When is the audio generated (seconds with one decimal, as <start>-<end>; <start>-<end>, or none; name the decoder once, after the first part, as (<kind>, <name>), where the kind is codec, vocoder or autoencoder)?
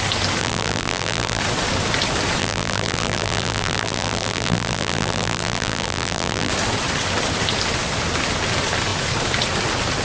0.4-1.4 (vocoder, BigVGAN v2); 2.4-6.5